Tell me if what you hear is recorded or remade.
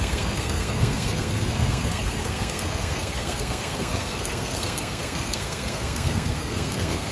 remade